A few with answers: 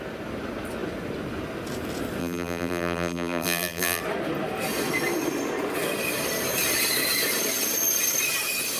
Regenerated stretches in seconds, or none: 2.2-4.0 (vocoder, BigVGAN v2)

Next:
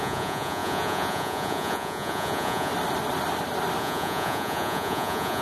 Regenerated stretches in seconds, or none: 0.0-2.7 (vocoder, Vocos); 3.8-5.4

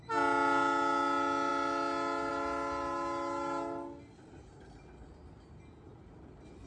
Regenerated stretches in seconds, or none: none

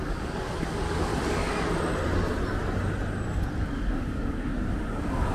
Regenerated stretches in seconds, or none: 0.0-1.1 (codec, DAC); 3.5-5.3

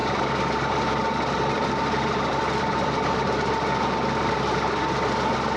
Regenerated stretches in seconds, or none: 0.0-3.4 (vocoder, BigVGAN v2)

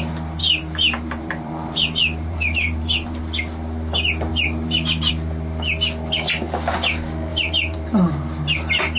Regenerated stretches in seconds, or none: 0.4-3.2 (vocoder, BigVGAN v2); 4.3-5.1; 7.3-8.1

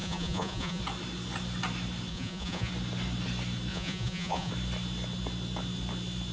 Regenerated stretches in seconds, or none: 0.0-0.8 (vocoder, Vocos); 2.1-2.7; 3.7-4.5

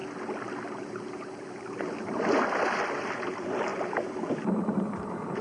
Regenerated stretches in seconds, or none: 3.2-3.7 (vocoder, BigVGAN v2); 4.7-5.4